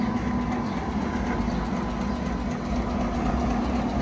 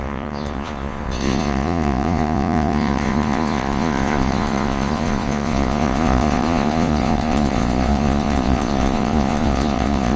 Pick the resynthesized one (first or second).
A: second